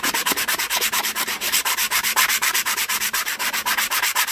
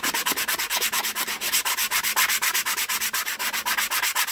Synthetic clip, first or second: first